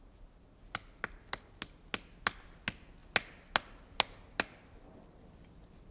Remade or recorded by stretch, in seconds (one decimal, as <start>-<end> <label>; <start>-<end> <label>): 0.0-5.9 recorded

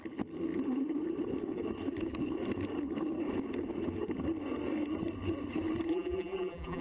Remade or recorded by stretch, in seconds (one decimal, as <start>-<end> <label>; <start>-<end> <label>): 0.0-5.9 recorded; 5.9-6.8 remade